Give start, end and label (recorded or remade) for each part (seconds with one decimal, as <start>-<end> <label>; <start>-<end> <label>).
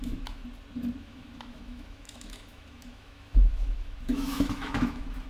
0.0-0.4 remade; 0.4-1.0 recorded; 1.0-5.3 remade